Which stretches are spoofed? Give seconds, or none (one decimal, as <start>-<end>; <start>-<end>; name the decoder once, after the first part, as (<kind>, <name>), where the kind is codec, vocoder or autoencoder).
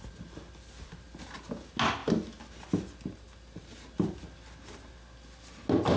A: none